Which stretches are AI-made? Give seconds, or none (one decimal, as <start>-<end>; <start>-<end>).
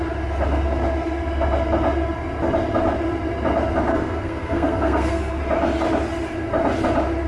3.9-5.4